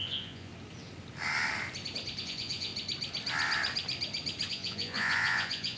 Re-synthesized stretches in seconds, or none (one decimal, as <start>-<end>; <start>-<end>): 0.0-0.5; 2.2-2.7; 4.5-5.8